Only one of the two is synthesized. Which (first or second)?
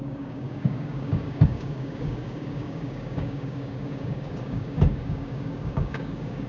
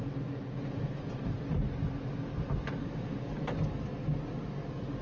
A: first